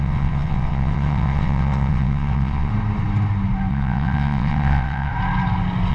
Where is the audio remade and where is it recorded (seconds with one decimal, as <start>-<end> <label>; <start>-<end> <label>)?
0.0-2.7 remade; 2.7-3.7 recorded; 3.7-5.1 remade; 5.1-5.9 recorded